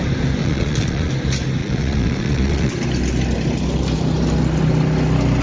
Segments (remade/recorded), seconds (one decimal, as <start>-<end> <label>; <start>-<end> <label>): 0.0-0.4 recorded; 0.4-1.1 remade; 1.1-1.6 recorded; 1.6-2.7 remade; 2.7-5.4 recorded